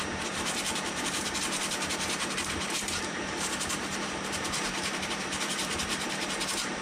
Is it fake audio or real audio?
fake